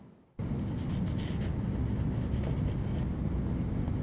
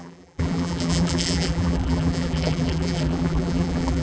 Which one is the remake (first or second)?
second